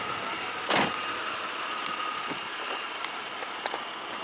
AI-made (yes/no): no